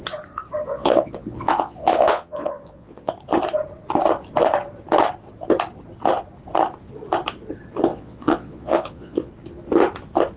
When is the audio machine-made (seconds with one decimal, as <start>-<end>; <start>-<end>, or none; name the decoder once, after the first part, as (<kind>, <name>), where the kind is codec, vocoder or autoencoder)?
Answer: 0.7-3.1 (vocoder, Vocos); 7.9-9.3

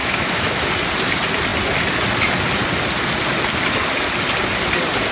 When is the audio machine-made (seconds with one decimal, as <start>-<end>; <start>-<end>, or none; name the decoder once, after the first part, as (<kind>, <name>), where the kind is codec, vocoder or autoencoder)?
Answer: 0.0-0.7 (autoencoder, DAC-VAE)